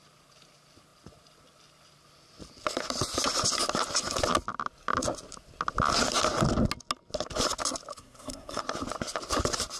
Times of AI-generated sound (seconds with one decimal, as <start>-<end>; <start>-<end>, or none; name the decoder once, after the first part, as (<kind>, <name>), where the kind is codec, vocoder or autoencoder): 7.9-8.6 (codec, SNAC)